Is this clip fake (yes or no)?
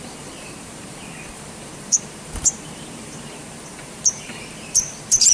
yes